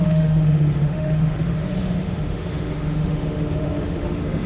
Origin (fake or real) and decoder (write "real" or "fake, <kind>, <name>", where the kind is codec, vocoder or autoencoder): fake, autoencoder, DAC-VAE